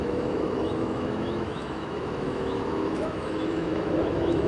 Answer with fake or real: fake